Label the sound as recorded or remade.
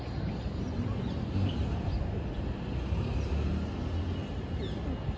recorded